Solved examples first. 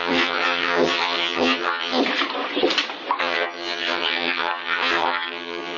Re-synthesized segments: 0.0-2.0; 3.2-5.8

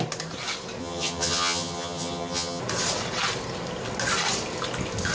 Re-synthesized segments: 0.8-2.6

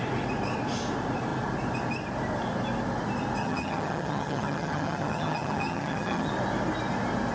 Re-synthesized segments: 3.4-6.3

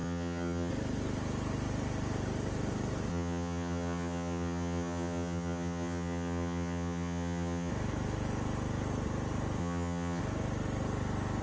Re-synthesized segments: 0.0-0.7; 3.1-7.7; 9.6-10.2